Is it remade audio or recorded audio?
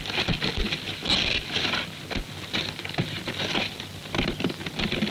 recorded